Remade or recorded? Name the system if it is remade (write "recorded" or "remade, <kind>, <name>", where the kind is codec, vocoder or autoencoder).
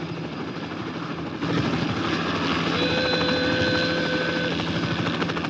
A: recorded